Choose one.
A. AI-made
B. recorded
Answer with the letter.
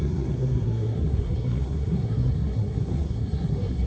A